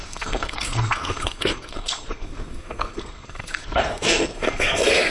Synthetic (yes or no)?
yes